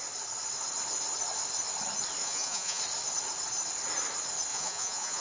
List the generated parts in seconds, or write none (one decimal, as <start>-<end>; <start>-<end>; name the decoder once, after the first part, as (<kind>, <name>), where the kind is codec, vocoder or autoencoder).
2.2-2.8 (vocoder, Vocos); 4.5-5.2